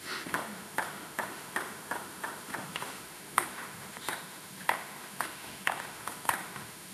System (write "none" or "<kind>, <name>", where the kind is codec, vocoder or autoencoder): autoencoder, DAC-VAE